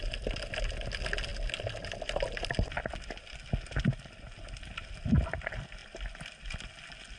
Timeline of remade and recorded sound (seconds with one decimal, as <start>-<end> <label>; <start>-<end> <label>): 0.0-7.2 recorded